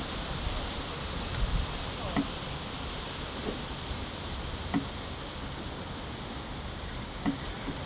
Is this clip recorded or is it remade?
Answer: recorded